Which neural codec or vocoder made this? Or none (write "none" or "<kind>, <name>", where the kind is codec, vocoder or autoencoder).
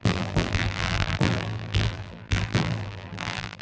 vocoder, BigVGAN v2